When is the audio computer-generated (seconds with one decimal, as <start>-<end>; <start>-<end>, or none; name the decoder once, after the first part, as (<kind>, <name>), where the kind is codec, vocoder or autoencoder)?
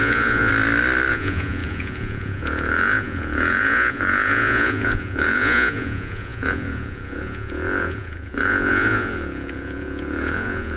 0.0-0.5 (vocoder, Vocos); 1.1-10.8